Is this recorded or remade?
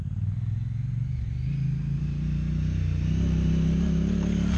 recorded